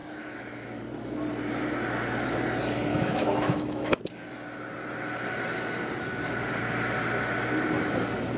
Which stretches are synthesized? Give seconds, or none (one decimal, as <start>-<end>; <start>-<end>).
0.0-0.8; 2.9-4.0

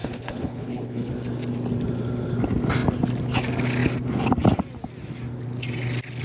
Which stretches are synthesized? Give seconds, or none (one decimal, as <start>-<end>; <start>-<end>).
0.0-1.1